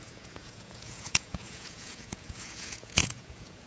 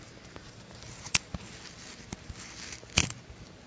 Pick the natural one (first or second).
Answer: second